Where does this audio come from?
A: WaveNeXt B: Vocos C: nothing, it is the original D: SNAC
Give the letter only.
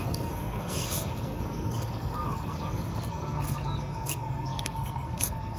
D